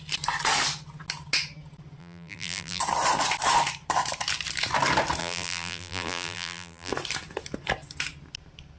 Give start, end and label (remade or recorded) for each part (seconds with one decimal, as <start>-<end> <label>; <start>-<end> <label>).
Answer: 0.0-2.0 recorded; 2.0-2.8 remade; 2.8-5.2 recorded; 5.2-6.9 remade; 6.9-8.8 recorded

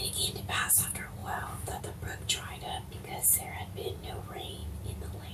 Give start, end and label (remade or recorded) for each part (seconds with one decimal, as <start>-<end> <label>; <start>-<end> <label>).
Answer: 0.0-1.2 recorded; 1.2-1.8 remade; 1.8-5.3 recorded

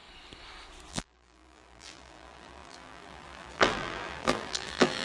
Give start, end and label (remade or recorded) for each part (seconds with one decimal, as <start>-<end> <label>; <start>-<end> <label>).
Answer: 0.0-0.9 recorded; 0.9-5.0 remade